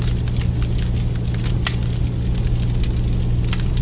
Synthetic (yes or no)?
no